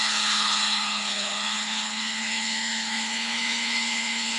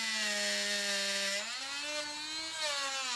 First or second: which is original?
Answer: second